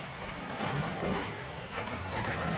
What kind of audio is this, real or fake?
fake